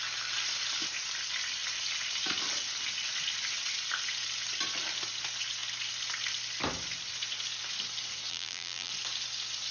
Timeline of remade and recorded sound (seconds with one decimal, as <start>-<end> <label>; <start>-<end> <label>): 0.0-8.3 recorded; 8.3-8.9 remade; 8.9-9.7 recorded